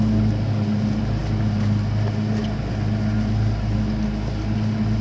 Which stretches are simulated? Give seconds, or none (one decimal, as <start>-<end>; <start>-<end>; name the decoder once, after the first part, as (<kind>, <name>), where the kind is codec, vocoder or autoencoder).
none